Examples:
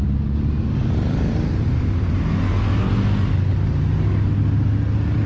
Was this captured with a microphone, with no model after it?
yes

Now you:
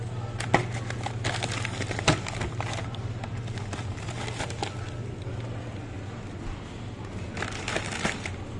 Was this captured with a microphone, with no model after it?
yes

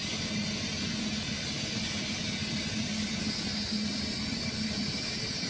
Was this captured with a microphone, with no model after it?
yes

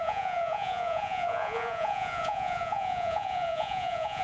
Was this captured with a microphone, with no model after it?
no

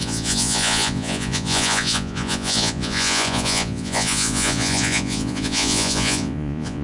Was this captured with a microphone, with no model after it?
no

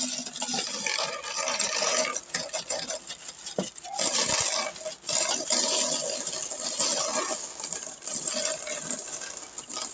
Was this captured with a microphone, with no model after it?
yes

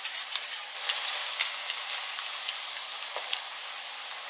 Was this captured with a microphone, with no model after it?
yes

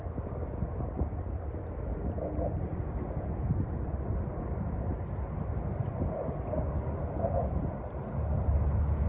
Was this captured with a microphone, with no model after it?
yes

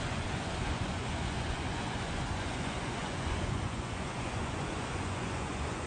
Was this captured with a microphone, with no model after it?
no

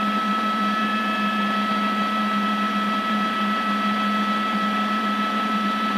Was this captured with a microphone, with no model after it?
yes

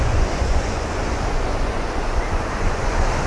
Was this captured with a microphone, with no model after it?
no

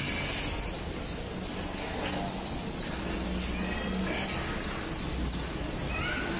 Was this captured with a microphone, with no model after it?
yes